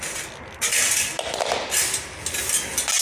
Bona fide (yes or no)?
yes